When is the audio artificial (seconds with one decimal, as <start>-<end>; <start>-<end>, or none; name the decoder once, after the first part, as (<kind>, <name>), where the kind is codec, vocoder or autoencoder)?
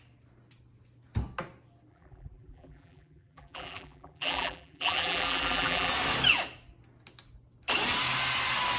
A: 1.9-5.9 (vocoder, BigVGAN v2)